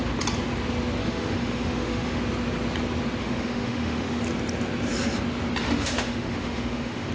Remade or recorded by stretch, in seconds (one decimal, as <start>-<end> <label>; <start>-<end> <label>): 0.0-1.0 recorded; 1.0-2.2 remade; 2.2-3.2 recorded; 3.2-4.2 remade; 4.2-5.6 recorded; 5.6-7.1 remade